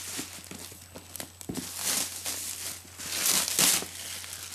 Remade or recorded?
recorded